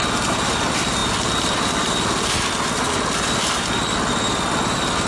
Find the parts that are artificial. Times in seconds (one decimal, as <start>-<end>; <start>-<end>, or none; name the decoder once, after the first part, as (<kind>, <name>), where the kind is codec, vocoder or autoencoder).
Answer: none